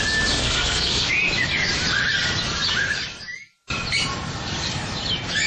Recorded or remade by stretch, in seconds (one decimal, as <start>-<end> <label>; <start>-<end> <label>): 0.0-0.4 recorded; 0.4-1.1 remade; 1.1-5.5 recorded